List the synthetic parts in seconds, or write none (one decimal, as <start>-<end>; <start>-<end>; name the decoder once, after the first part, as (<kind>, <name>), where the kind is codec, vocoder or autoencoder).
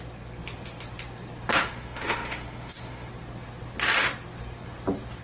1.5-3.1 (autoencoder, DAC-VAE)